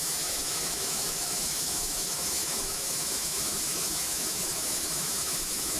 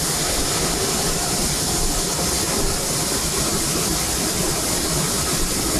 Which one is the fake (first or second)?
first